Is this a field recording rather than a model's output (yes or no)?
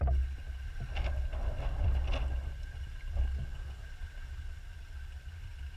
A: yes